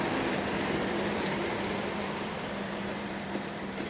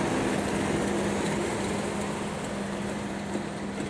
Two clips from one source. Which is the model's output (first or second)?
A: first